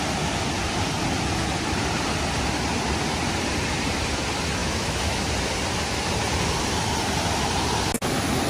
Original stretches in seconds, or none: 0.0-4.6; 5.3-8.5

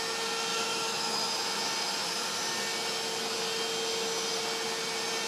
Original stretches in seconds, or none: 0.0-0.5; 1.3-5.3

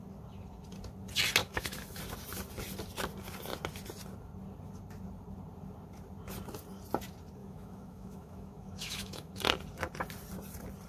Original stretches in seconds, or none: 0.0-1.4; 2.0-7.4; 9.3-10.9

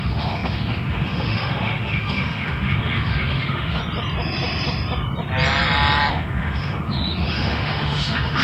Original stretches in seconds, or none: 3.8-6.1